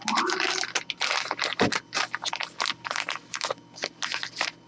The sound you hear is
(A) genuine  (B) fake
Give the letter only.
A